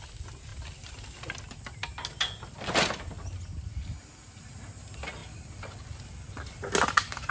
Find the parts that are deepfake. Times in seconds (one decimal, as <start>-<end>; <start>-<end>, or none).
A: none